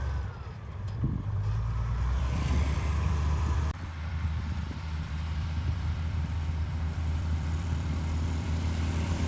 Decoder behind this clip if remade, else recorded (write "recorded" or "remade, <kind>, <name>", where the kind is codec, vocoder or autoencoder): remade, vocoder, BigVGAN v2